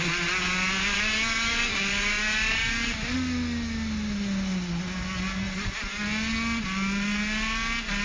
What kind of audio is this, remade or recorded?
recorded